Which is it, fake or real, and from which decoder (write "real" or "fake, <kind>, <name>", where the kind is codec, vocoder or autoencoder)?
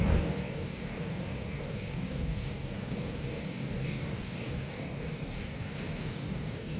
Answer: fake, codec, DAC